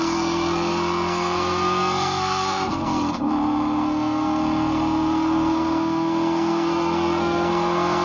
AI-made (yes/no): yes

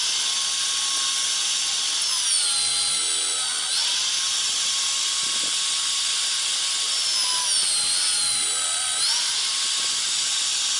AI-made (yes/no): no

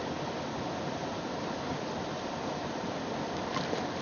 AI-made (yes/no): no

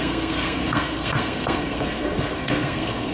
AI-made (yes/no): yes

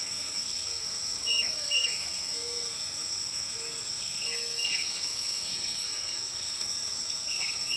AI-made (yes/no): yes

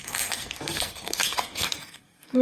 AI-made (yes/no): yes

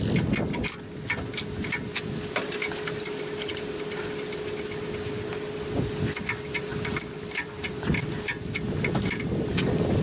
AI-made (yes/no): no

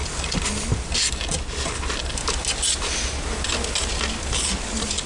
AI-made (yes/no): no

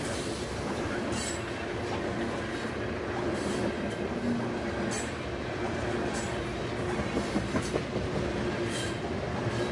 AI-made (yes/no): no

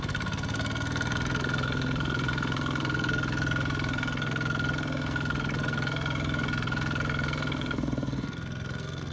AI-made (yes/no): yes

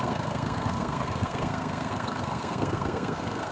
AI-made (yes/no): yes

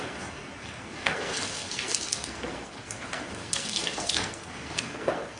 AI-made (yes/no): yes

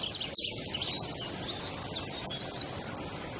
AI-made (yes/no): no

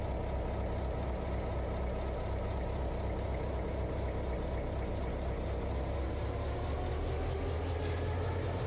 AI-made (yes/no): no